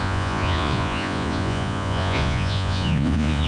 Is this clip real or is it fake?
fake